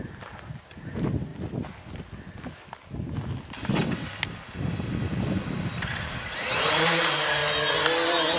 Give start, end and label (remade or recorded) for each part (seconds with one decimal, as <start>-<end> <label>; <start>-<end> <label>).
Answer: 0.0-1.3 remade; 1.3-5.9 recorded; 5.9-7.4 remade; 7.4-8.4 recorded